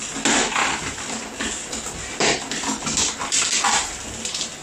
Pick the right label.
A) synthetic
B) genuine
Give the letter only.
B